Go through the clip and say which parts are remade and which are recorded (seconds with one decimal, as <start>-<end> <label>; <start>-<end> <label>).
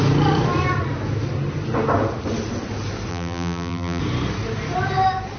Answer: 0.0-3.1 recorded; 3.1-4.0 remade; 4.0-5.4 recorded